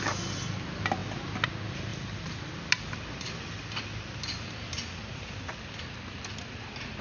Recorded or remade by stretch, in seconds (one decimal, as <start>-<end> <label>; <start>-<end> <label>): 0.0-7.0 recorded